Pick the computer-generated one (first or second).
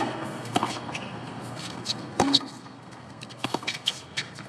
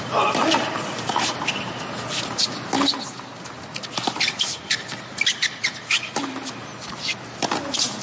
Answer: first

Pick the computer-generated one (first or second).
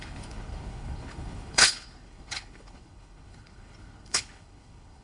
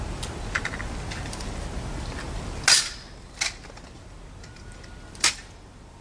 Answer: first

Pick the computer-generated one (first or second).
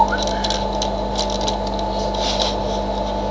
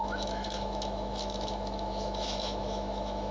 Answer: second